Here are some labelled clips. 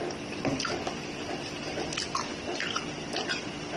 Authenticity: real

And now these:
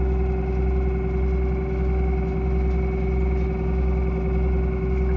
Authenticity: real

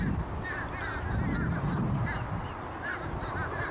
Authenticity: real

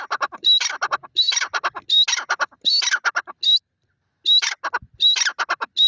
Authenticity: real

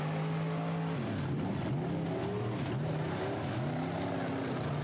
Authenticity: real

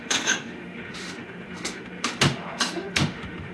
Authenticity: fake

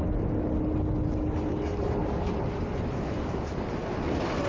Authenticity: real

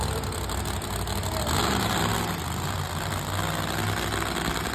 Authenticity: real